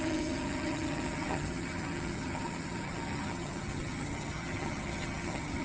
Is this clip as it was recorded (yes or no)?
no